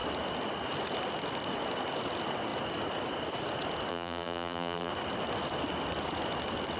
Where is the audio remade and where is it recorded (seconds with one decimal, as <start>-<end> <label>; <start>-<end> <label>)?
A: 0.0-3.9 recorded; 3.9-4.9 remade; 4.9-6.8 recorded